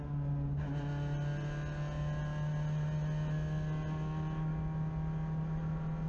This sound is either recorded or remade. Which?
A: recorded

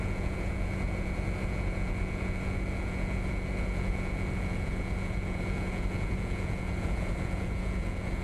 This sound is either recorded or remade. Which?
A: remade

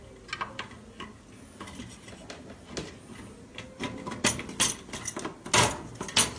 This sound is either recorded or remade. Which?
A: recorded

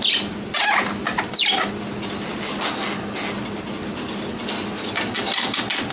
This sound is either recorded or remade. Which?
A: recorded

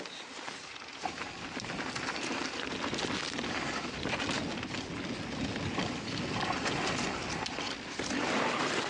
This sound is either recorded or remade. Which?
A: recorded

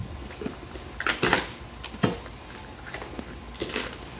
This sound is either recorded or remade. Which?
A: recorded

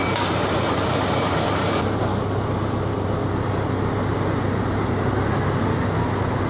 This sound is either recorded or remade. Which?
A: recorded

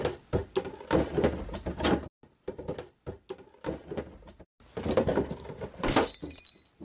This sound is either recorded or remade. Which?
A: recorded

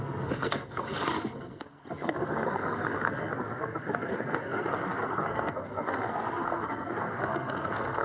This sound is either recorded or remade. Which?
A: remade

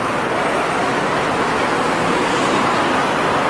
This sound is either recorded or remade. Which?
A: recorded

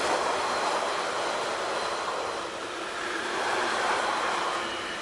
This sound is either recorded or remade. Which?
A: recorded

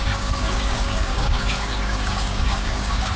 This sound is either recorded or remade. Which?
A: remade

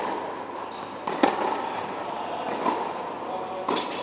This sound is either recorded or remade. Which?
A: recorded